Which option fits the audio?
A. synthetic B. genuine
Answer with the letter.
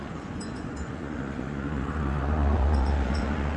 A